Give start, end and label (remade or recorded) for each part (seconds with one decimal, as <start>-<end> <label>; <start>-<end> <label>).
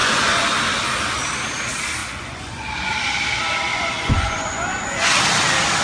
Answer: 0.0-0.6 remade; 0.6-2.0 recorded; 2.0-3.0 remade; 3.0-3.7 recorded; 3.7-5.2 remade; 5.2-5.8 recorded